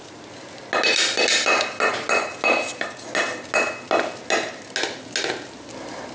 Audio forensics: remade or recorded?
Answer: recorded